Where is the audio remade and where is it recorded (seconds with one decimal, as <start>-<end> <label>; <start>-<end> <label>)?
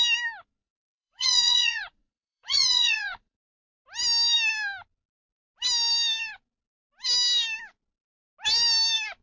0.0-0.6 recorded; 0.6-3.4 remade; 3.4-9.2 recorded